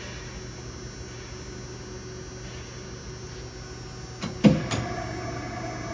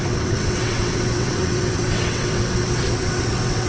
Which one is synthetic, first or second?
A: second